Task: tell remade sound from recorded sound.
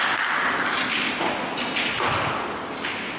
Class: recorded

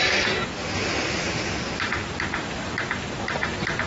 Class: recorded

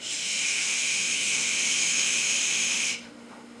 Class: remade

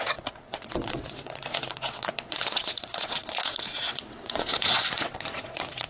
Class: remade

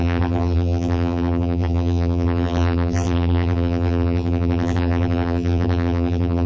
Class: remade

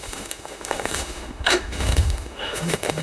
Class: remade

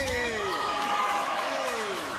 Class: remade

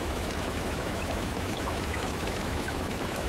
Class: remade